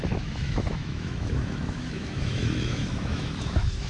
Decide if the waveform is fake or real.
fake